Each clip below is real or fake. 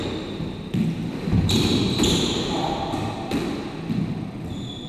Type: real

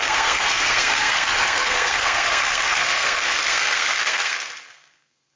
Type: fake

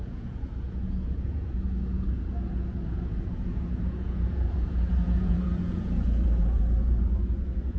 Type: fake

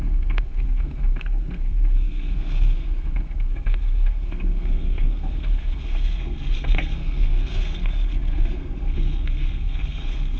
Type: fake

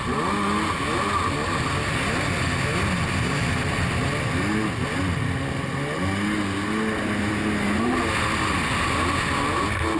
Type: real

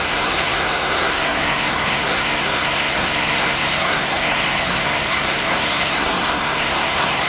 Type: fake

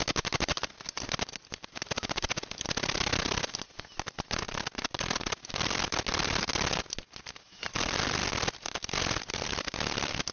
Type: real